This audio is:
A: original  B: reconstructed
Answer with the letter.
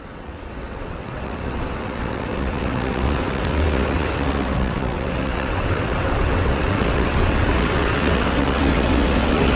B